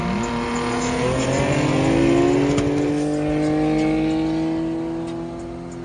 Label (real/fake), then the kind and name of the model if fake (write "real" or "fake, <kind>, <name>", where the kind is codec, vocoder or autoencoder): real